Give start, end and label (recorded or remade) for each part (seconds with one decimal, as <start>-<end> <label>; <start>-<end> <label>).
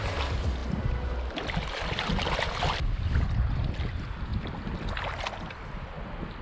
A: 0.0-6.4 recorded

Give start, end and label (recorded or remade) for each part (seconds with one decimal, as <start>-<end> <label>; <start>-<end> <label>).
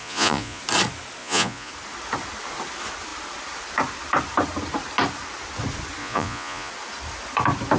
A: 0.0-0.6 remade; 0.6-1.2 recorded; 1.2-1.7 remade; 1.7-6.0 recorded; 6.0-6.7 remade; 6.7-7.8 recorded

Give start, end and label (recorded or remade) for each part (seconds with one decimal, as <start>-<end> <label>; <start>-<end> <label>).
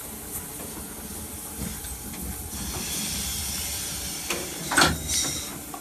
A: 0.0-5.8 recorded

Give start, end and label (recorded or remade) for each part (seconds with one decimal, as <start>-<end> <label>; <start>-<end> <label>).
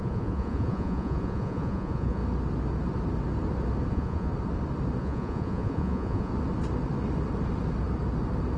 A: 0.0-2.2 remade; 2.2-3.9 recorded; 3.9-4.3 remade; 4.3-5.0 recorded; 5.0-6.3 remade; 6.3-8.6 recorded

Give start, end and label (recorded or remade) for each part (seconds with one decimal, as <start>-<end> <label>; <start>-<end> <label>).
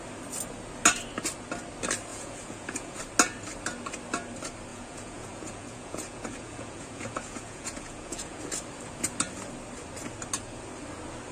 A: 0.0-2.1 recorded; 2.1-3.0 remade; 3.0-4.7 recorded; 4.7-8.4 remade; 8.4-11.3 recorded